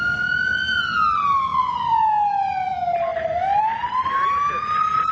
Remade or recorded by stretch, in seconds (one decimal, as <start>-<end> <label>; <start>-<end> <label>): 0.0-1.5 recorded; 1.5-2.0 remade; 2.0-5.1 recorded